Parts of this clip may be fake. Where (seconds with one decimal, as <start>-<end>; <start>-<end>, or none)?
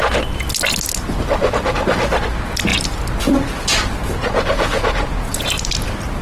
4.2-5.5